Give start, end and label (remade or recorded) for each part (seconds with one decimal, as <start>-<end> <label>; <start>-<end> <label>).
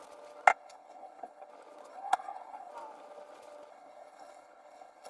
0.0-0.5 recorded; 0.5-1.5 remade; 1.5-1.9 recorded; 1.9-2.7 remade; 2.7-3.7 recorded; 3.7-5.1 remade